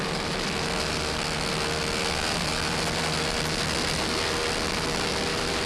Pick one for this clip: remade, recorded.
recorded